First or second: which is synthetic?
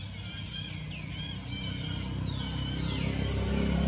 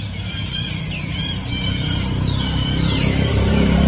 second